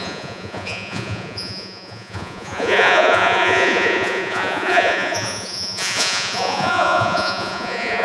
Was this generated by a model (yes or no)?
yes